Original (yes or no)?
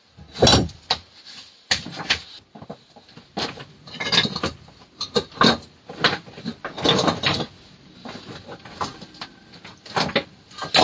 yes